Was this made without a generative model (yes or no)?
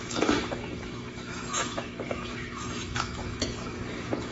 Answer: no